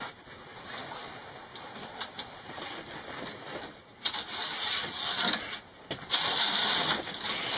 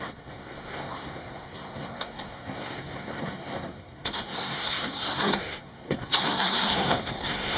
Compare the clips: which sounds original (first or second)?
first